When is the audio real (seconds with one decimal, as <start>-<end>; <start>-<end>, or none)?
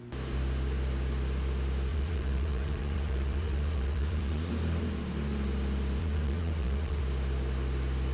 0.0-1.9; 4.5-6.0; 7.0-8.1